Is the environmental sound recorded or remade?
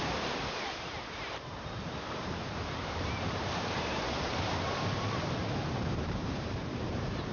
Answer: remade